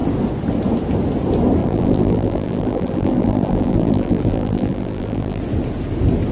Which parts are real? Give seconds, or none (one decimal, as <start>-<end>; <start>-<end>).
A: 0.0-1.6; 5.4-6.3